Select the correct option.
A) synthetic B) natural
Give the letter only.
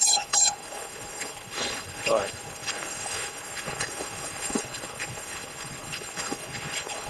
A